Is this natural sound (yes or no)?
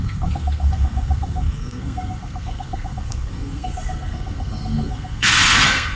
no